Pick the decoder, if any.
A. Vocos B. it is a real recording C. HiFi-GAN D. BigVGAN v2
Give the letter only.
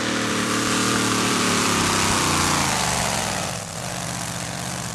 D